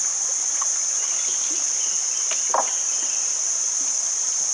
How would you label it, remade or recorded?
recorded